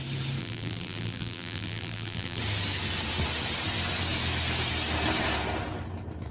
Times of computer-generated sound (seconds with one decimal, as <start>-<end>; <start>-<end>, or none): 0.4-2.4